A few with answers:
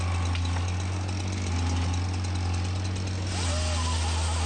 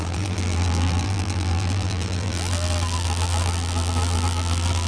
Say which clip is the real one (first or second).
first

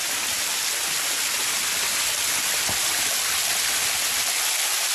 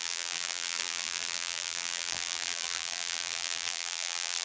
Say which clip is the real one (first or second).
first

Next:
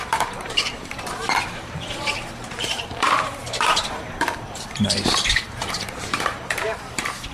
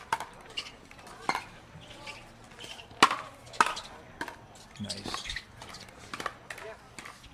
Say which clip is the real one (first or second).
second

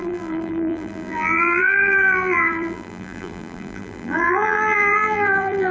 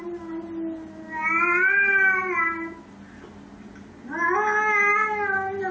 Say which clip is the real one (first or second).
second